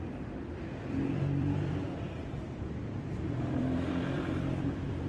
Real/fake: fake